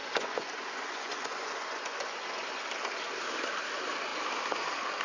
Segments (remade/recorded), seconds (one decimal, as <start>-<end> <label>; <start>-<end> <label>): 0.0-2.6 remade; 2.6-5.0 recorded